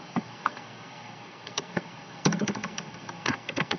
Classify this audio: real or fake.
fake